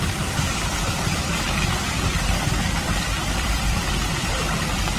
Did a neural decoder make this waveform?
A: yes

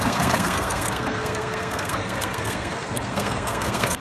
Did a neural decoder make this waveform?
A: yes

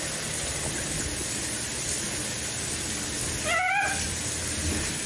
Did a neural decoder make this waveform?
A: no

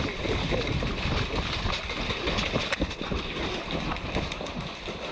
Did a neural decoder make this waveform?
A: no